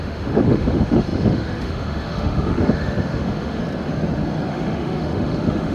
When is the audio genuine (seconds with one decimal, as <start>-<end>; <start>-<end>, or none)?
3.6-4.5